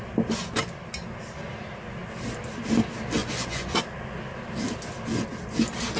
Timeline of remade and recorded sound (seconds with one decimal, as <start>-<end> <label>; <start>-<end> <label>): 0.0-3.2 recorded; 3.2-3.8 remade; 3.8-6.0 recorded